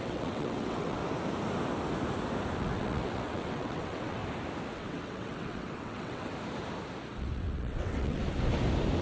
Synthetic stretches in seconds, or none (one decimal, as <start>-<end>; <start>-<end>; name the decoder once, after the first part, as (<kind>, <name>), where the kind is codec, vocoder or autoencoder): 0.0-1.0 (vocoder, WaveNeXt); 2.6-4.2; 4.7-6.3; 7.1-8.2

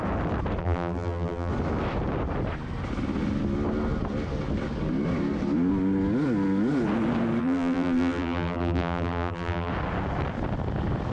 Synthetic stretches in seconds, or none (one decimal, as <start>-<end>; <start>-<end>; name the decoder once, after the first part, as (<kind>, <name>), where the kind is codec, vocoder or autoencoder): 0.6-1.5 (vocoder, BigVGAN v2); 7.4-9.7

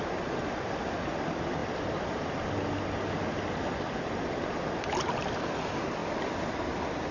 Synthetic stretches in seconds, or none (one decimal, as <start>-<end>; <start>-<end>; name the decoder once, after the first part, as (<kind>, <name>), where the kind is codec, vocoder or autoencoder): none

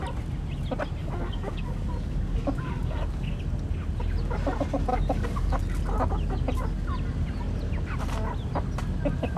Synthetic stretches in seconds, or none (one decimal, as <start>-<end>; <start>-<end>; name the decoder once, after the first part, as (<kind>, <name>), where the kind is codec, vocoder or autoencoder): 1.0-3.4 (codec, DAC); 4.9-5.6

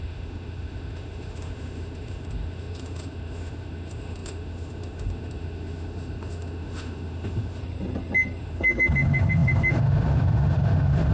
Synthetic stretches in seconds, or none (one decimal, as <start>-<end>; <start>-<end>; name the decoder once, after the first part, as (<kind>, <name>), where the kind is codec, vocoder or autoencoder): 0.0-7.6 (autoencoder, DAC-VAE); 8.4-11.1